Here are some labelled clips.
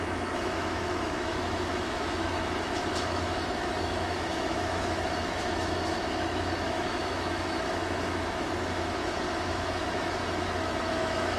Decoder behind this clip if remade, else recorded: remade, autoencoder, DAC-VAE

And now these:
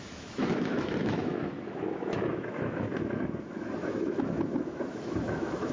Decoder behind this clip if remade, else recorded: remade, autoencoder, DAC-VAE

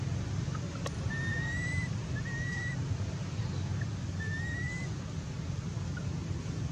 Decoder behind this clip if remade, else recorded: recorded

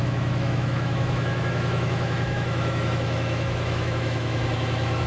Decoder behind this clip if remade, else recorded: remade, autoencoder, DAC-VAE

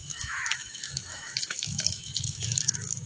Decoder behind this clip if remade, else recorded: remade, autoencoder, DAC-VAE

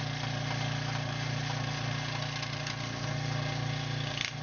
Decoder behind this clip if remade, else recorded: recorded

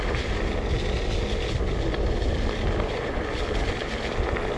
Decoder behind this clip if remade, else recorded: recorded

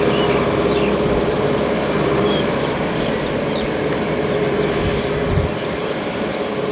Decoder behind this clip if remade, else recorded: recorded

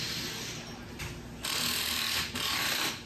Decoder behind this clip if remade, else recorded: recorded